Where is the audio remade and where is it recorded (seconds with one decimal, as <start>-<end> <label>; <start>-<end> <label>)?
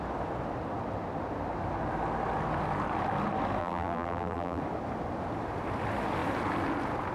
0.0-3.6 recorded; 3.6-4.6 remade; 4.6-7.1 recorded